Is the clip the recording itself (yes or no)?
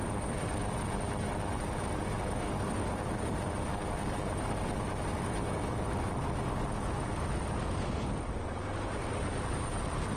yes